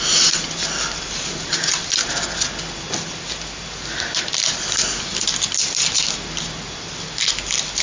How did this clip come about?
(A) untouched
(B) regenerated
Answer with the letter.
A